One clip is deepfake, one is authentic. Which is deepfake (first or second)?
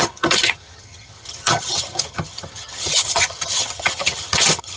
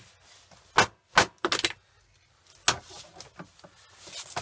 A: first